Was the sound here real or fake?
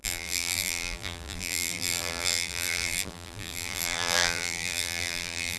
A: fake